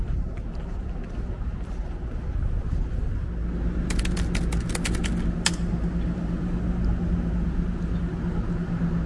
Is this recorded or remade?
recorded